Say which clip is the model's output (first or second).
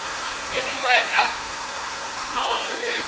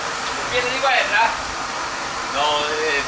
first